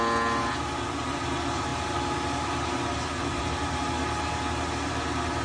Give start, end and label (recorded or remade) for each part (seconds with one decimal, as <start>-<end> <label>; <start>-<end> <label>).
0.0-5.4 recorded